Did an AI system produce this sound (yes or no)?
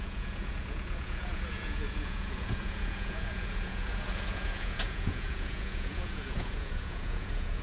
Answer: yes